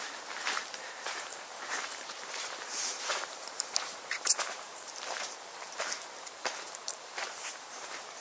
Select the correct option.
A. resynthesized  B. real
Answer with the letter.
A